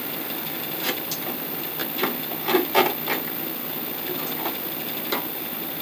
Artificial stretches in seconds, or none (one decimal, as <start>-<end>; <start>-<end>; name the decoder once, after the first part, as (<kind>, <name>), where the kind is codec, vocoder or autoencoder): 0.0-1.8 (vocoder, BigVGAN v2); 4.5-5.8